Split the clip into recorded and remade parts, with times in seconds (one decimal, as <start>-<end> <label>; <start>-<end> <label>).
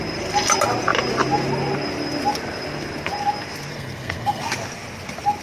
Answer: 0.0-3.7 recorded; 3.7-4.4 remade; 4.4-5.4 recorded